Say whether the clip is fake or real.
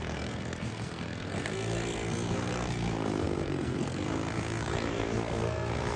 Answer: fake